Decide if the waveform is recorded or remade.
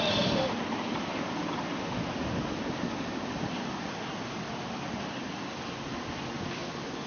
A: recorded